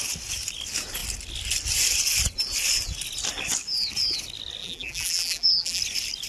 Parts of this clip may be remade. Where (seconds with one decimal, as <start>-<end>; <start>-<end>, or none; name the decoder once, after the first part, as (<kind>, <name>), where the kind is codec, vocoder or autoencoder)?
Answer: 4.6-5.8 (vocoder, BigVGAN v2)